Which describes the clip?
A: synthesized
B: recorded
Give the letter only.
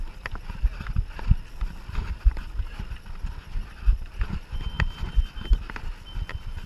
B